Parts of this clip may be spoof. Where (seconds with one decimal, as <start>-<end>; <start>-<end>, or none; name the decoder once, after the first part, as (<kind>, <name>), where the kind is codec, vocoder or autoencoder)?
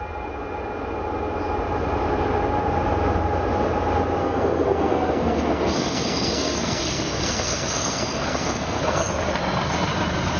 4.2-9.1 (codec, SNAC)